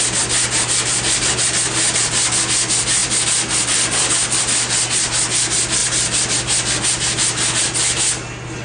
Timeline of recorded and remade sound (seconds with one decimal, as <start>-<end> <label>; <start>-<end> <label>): 0.0-8.6 recorded